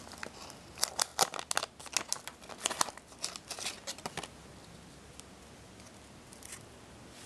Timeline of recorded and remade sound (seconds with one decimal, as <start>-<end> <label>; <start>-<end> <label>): 0.0-7.3 recorded